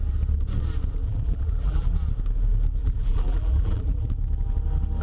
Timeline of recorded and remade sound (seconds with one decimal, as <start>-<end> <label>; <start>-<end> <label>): 0.0-1.0 recorded; 1.0-1.9 remade; 1.9-2.8 recorded; 2.8-4.1 remade; 4.1-5.0 recorded